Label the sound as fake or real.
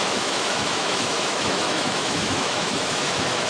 fake